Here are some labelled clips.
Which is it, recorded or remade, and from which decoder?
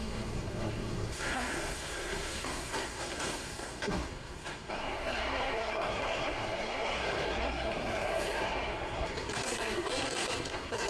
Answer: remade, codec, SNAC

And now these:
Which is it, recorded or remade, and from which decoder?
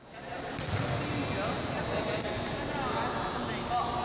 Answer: recorded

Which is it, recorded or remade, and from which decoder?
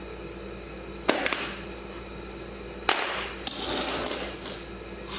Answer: recorded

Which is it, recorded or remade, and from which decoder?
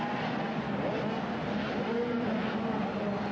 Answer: recorded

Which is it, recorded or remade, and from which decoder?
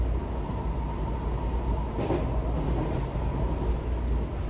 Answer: recorded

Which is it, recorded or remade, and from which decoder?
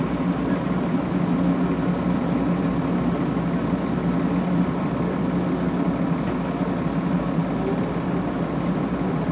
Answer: recorded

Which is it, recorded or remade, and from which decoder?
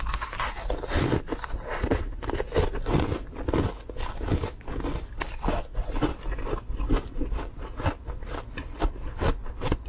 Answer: recorded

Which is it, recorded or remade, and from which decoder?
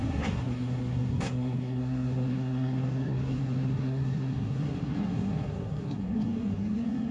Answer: remade, codec, SNAC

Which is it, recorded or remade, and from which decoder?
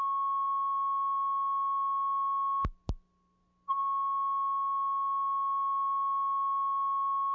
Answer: recorded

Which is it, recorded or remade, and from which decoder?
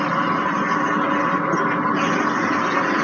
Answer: recorded